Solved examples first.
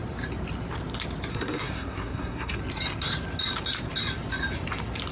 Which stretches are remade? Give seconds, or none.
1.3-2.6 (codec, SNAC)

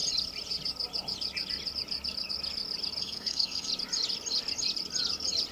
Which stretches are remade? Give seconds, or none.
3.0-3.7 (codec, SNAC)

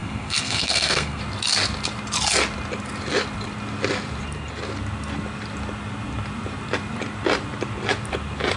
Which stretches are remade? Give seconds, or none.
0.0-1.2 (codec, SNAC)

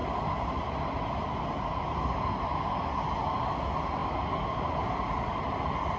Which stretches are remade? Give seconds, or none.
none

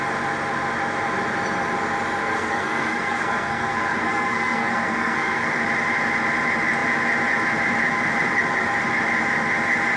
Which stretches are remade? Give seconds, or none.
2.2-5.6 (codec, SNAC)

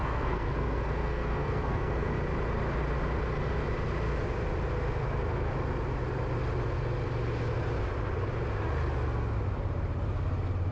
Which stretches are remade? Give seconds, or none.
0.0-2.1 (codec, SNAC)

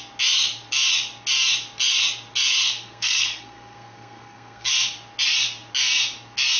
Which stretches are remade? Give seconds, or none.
2.6-4.7 (codec, SNAC)

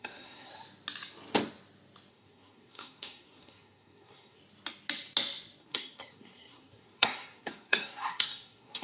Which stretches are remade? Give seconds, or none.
0.0-0.5 (codec, SNAC); 2.1-4.4; 5.6-8.8